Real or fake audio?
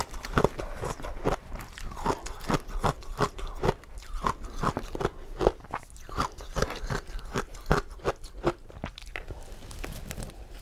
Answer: real